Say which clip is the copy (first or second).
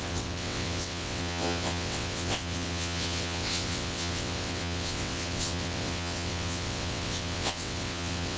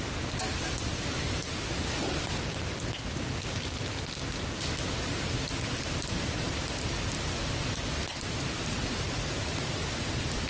first